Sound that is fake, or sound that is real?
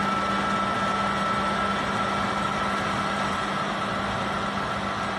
real